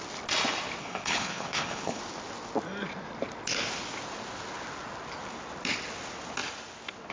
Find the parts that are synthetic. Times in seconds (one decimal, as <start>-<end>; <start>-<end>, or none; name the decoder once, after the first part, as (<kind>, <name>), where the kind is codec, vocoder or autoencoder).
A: 0.8-2.0 (codec, HILCodec)